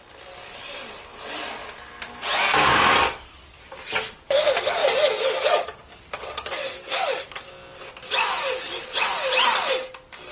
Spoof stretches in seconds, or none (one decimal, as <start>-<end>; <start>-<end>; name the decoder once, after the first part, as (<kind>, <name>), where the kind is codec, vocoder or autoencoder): 2.9-3.6 (codec, DAC); 4.8-7.5